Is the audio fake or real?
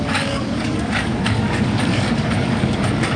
fake